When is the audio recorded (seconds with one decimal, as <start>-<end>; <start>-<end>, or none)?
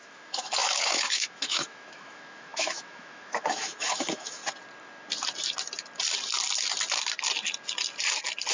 4.4-8.5